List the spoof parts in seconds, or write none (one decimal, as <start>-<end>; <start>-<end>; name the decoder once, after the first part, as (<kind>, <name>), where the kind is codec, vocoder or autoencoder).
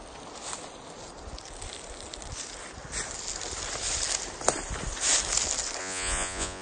5.8-6.6 (vocoder, Vocos)